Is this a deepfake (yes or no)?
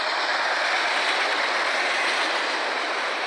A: no